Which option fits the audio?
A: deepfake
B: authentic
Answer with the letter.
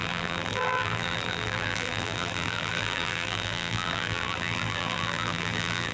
A